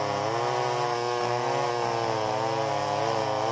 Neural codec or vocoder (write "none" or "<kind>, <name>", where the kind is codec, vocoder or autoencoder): none